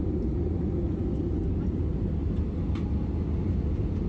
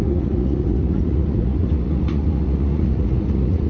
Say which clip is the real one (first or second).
first